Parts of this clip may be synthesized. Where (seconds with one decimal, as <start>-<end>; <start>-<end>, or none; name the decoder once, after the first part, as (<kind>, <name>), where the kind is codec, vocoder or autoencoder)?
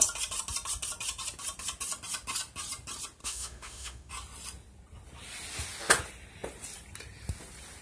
3.2-4.1 (autoencoder, DAC-VAE)